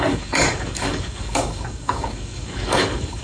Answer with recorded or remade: remade